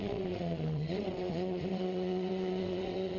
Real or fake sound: fake